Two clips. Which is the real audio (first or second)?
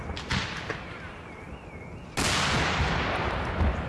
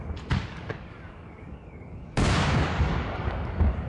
first